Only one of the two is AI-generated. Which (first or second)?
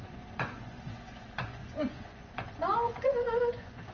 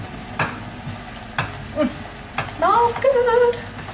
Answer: first